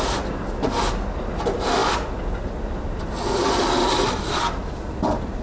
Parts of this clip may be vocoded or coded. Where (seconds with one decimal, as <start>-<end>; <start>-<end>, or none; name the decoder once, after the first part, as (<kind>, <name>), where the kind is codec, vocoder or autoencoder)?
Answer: none